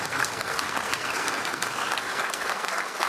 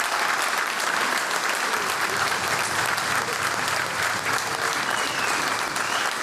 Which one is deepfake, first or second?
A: first